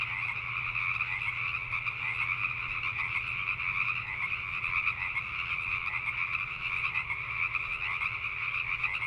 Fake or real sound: real